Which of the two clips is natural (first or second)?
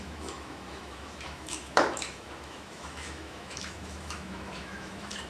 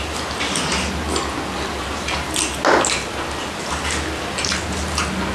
second